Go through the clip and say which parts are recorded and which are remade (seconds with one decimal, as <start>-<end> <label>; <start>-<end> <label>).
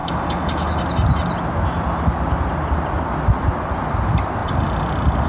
0.0-0.8 remade; 0.8-5.3 recorded